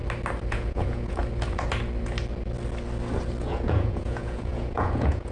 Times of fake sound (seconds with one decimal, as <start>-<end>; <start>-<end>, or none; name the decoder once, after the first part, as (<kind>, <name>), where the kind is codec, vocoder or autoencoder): 0.5-1.2 (vocoder, Vocos); 3.4-5.3